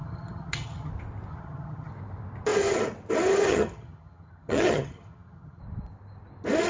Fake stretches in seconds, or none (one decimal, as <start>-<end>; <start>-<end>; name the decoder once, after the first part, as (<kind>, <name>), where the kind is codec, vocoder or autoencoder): 0.0-0.9 (vocoder, HiFi-GAN); 1.3-1.9; 3.5-5.6

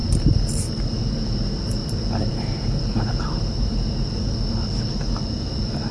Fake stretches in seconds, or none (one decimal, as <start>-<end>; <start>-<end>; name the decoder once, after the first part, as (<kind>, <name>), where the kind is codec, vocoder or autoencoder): 0.0-0.8 (vocoder, BigVGAN v2); 1.8-3.9

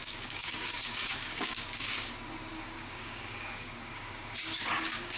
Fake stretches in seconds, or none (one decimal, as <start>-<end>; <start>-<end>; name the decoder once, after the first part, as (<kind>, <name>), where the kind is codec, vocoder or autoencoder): 0.0-2.1 (codec, DAC); 2.5-5.2